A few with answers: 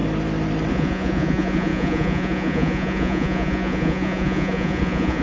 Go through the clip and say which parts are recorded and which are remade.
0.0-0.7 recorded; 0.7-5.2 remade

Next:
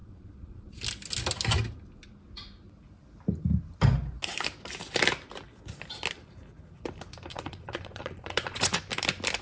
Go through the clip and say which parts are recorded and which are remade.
0.0-0.8 remade; 0.8-7.3 recorded; 7.3-8.8 remade; 8.8-9.4 recorded

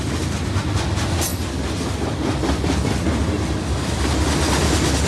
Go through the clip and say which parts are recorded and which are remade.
0.0-5.1 recorded

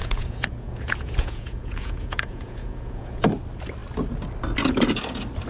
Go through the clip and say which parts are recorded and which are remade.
0.0-3.3 remade; 3.3-5.5 recorded